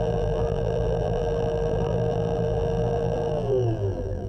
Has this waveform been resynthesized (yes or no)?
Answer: yes